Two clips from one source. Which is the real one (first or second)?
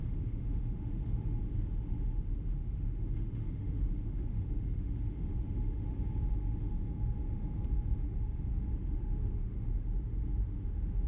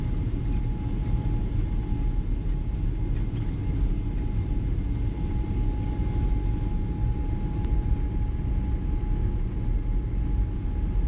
second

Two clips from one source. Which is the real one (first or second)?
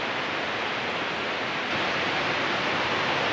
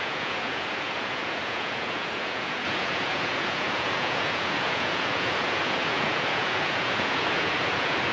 first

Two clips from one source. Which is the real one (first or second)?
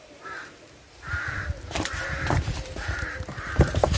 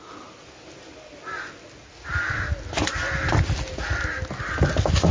second